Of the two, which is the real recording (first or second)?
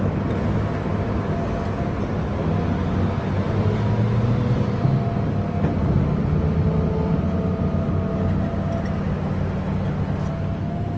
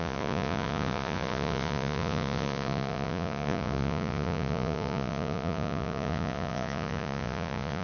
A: first